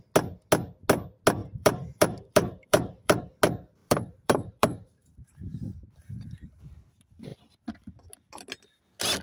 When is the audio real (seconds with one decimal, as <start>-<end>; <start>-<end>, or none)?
0.0-1.4; 3.2-3.8; 5.7-9.2